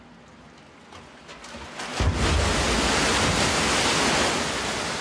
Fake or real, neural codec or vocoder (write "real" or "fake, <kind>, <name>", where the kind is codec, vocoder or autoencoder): real